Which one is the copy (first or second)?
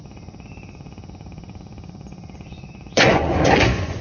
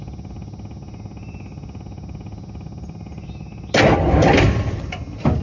first